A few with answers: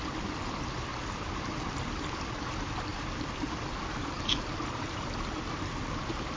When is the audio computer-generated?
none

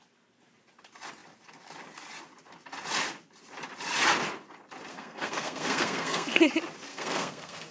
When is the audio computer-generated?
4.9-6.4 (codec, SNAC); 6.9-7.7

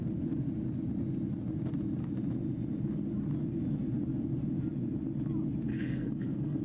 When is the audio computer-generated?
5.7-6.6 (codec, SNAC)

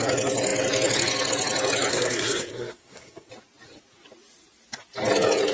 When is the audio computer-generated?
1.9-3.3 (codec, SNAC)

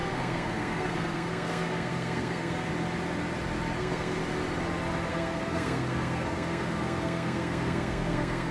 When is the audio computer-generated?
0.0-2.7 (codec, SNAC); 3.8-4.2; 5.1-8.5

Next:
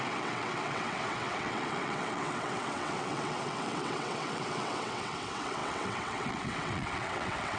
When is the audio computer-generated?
0.0-7.6 (vocoder, WaveNeXt)

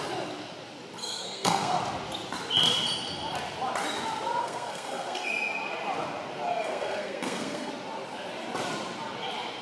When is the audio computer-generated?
1.0-1.8 (codec, SNAC); 4.4-5.3; 6.5-7.7